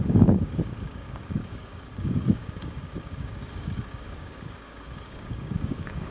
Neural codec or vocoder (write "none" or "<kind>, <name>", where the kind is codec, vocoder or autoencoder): codec, DAC